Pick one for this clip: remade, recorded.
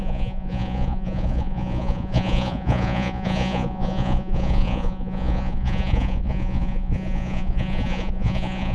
remade